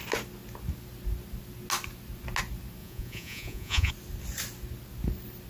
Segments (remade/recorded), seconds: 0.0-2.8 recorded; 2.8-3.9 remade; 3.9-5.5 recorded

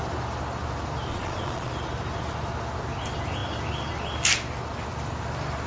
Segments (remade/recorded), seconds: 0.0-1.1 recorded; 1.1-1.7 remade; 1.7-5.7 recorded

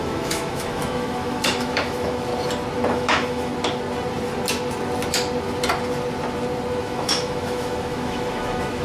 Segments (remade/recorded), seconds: 0.0-2.3 remade; 2.3-2.9 recorded; 2.9-3.5 remade; 3.5-6.8 recorded; 6.8-8.8 remade